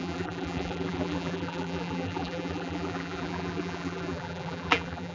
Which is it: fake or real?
fake